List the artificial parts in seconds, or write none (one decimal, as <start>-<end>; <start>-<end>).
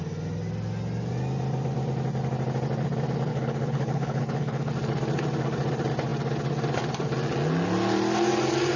3.3-4.7